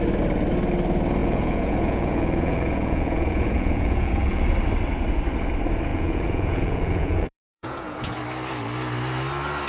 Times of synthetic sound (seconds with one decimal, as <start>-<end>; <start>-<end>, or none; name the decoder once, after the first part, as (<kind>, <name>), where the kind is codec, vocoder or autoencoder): 1.2-4.4 (vocoder, Vocos); 5.9-8.2